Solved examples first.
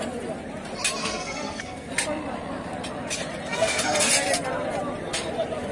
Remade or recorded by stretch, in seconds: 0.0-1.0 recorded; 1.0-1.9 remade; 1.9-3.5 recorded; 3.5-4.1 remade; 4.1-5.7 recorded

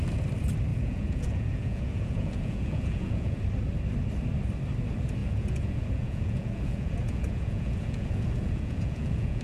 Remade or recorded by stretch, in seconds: 0.0-0.7 recorded; 0.7-3.4 remade; 3.4-5.2 recorded; 5.2-9.4 remade

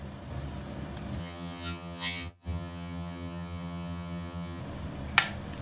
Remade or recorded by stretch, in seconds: 0.0-1.2 recorded; 1.2-4.6 remade; 4.6-5.6 recorded

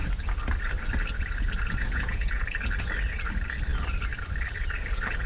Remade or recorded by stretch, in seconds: 0.0-1.8 recorded; 1.8-2.4 remade; 2.4-5.3 recorded

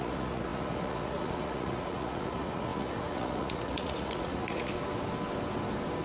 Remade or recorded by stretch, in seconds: 0.0-4.7 remade; 4.7-6.0 recorded

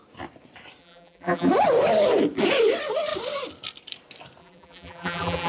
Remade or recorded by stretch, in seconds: 0.0-0.8 recorded; 0.8-1.5 remade; 1.5-4.4 recorded; 4.4-5.5 remade

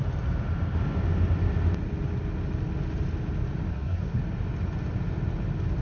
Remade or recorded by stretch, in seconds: 0.0-3.7 recorded; 3.7-4.2 remade; 4.2-5.8 recorded

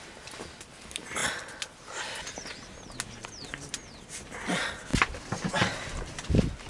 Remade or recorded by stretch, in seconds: 0.0-6.7 recorded